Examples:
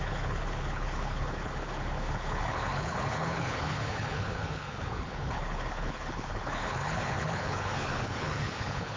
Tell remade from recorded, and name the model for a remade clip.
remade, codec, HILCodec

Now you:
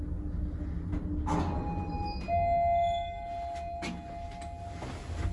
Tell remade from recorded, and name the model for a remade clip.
recorded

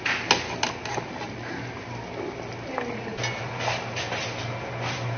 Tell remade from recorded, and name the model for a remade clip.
recorded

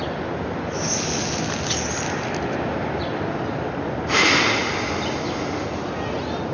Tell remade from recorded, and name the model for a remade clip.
recorded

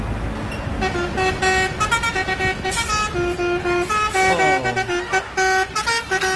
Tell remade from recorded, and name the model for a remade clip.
recorded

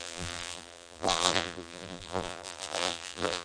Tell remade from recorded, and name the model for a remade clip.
remade, vocoder, BigVGAN v2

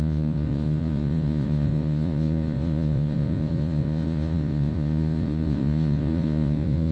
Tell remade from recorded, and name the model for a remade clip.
remade, vocoder, Vocos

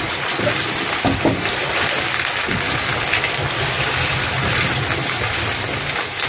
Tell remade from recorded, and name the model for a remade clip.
recorded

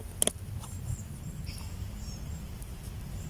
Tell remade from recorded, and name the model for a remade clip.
recorded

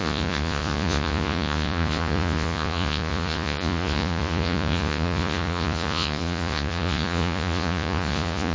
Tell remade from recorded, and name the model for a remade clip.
remade, vocoder, Vocos